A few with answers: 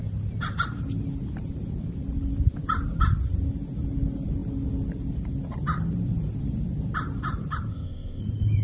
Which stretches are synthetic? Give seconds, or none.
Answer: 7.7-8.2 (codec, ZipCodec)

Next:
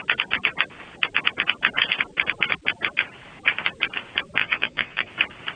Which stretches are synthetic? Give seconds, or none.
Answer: 4.4-5.1 (vocoder, WaveNeXt)

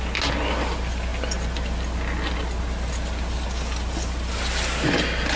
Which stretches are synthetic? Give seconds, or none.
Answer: none

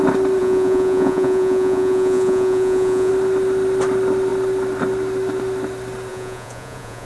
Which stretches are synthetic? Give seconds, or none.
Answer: 0.4-3.1 (vocoder, Vocos); 6.1-7.1

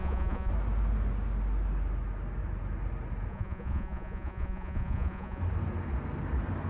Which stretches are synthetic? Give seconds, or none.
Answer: 0.0-0.5 (vocoder, Vocos); 3.3-5.4

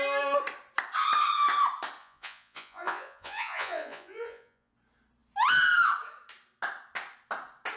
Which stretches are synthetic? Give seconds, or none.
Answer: 2.0-4.7 (vocoder, Vocos)

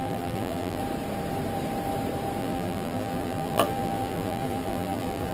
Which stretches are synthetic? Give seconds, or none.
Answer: 0.0-0.8 (vocoder, BigVGAN v2); 2.4-5.3

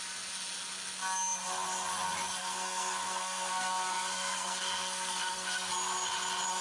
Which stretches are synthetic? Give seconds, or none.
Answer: 2.4-5.7 (codec, SNAC)